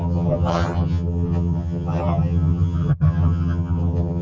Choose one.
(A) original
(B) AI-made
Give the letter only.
B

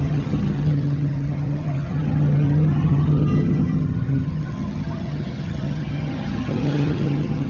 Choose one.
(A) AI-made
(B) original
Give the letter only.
A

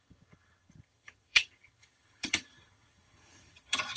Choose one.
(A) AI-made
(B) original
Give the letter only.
A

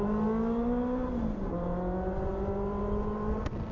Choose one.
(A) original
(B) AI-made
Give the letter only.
A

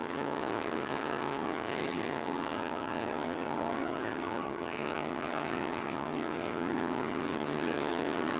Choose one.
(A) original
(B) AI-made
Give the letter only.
B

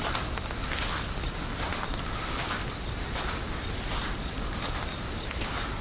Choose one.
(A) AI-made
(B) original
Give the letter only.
B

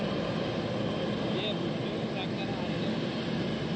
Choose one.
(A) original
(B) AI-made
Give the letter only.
A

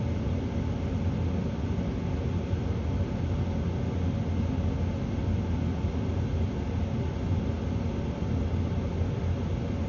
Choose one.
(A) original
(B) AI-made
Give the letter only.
A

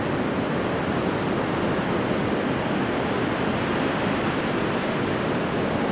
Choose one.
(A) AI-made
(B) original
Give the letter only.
B